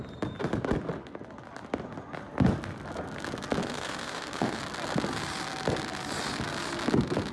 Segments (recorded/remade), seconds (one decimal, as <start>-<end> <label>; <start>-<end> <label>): 0.0-3.6 recorded; 3.6-4.6 remade; 4.6-7.3 recorded

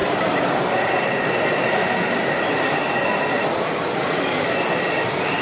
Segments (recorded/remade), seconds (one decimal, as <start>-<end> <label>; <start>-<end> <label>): 0.0-0.5 remade; 0.5-5.4 recorded

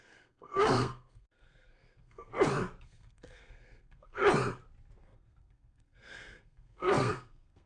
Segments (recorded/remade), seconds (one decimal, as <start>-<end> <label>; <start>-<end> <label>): 0.0-2.3 remade; 2.3-2.8 recorded; 2.8-4.2 remade; 4.2-5.0 recorded; 5.0-7.7 remade

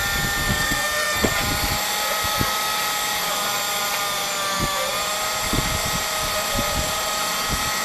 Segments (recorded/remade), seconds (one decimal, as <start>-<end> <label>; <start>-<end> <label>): 0.0-0.5 recorded; 0.5-1.3 remade; 1.3-7.8 recorded

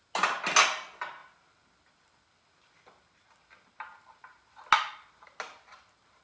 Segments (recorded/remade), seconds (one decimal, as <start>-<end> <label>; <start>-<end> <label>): 0.0-6.2 recorded